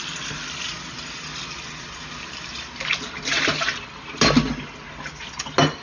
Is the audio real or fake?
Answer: real